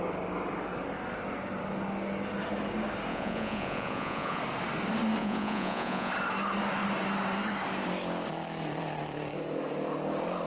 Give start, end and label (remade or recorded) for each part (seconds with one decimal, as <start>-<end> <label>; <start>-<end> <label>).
0.0-3.1 recorded; 3.1-4.4 remade; 4.4-5.2 recorded; 5.2-6.1 remade; 6.1-10.5 recorded